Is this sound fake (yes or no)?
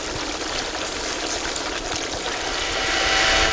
no